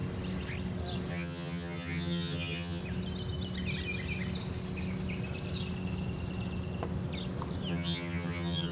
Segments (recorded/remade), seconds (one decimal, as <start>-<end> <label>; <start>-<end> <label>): 0.0-1.1 recorded; 1.1-2.8 remade; 2.8-7.7 recorded; 7.7-8.7 remade